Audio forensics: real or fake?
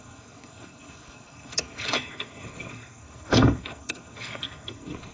fake